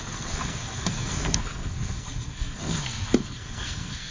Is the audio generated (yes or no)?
yes